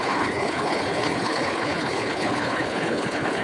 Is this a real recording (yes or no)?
no